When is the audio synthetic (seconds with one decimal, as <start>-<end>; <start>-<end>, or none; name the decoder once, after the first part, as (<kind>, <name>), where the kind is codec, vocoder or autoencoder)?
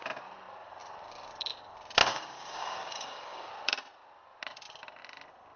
2.1-3.5 (codec, DAC)